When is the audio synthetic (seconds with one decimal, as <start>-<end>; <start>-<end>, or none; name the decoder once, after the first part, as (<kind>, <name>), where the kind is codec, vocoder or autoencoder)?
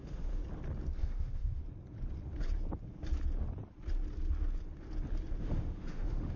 0.0-0.4 (autoencoder, DAC-VAE); 1.0-1.6; 5.4-6.4